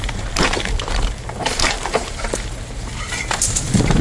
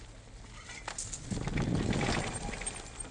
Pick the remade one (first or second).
first